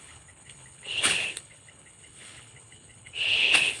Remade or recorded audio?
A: remade